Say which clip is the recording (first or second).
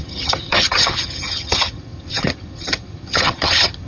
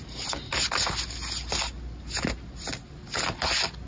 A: second